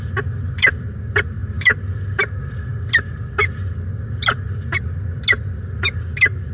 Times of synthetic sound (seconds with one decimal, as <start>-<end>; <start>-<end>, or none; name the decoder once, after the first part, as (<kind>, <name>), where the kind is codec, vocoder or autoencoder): none